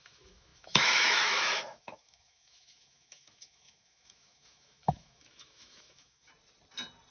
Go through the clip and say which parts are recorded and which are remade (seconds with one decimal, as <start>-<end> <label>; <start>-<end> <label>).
0.0-6.3 remade; 6.3-7.1 recorded